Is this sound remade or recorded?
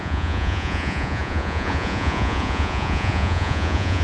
remade